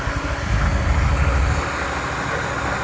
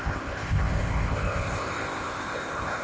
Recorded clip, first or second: first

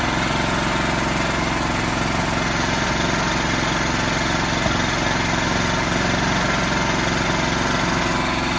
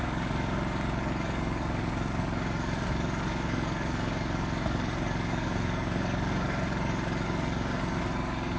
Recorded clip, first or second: first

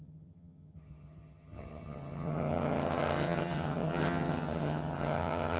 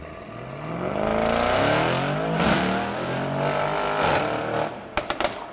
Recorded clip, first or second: second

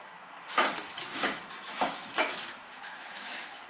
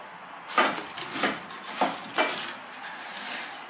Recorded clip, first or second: second